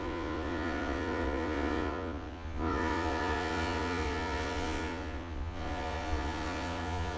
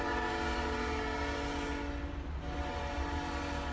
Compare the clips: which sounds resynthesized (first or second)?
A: first